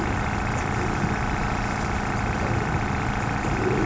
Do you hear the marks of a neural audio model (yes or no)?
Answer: no